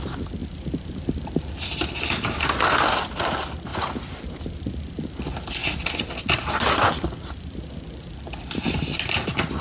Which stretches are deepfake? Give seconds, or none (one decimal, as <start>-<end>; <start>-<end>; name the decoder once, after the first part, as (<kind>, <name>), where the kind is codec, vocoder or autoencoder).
none